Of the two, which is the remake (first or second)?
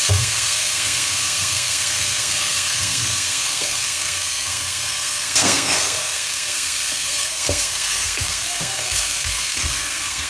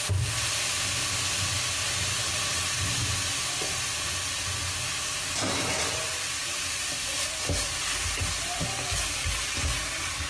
first